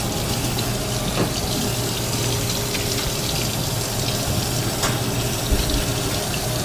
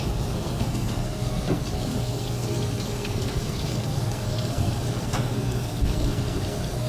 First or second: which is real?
first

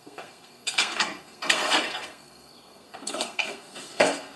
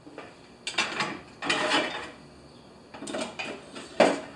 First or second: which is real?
second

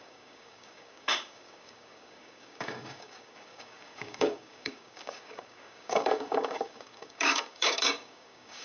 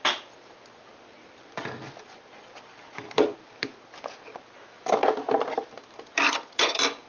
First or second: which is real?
second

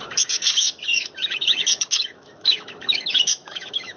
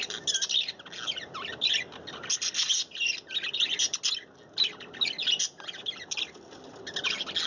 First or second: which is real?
second